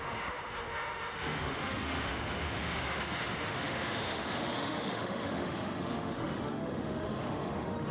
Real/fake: fake